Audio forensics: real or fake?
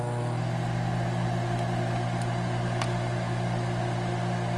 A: real